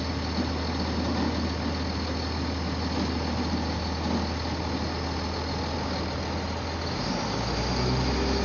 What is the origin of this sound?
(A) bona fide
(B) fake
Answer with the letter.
A